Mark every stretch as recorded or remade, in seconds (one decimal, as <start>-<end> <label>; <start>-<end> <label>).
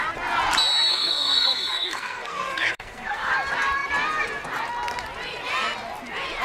0.0-0.9 recorded; 0.9-3.3 remade; 3.3-6.4 recorded